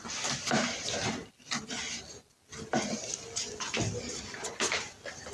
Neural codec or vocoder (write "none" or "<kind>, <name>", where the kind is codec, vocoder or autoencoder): none